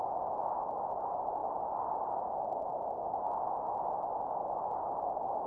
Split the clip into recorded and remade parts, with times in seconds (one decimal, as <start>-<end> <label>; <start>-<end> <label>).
0.0-5.5 recorded